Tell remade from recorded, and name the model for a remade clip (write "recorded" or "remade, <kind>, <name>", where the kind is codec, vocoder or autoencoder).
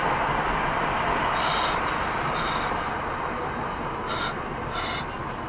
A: recorded